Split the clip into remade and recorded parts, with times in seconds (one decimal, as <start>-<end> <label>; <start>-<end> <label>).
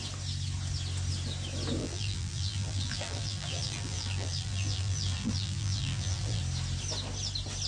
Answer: 0.0-1.8 recorded; 1.8-6.4 remade; 6.4-7.7 recorded